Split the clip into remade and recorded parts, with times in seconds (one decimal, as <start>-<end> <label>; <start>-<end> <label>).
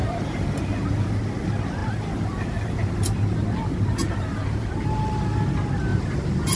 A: 0.0-1.2 remade; 1.2-1.8 recorded; 1.8-4.6 remade; 4.6-5.9 recorded; 5.9-6.6 remade